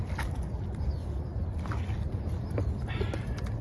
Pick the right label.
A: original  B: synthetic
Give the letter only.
A